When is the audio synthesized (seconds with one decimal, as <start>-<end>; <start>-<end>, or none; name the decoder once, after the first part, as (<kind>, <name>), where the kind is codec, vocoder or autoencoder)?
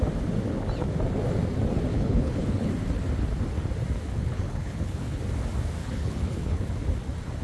1.9-2.7 (codec, HILCodec); 4.1-5.2; 5.8-6.7